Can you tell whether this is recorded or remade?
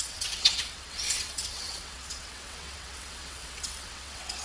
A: remade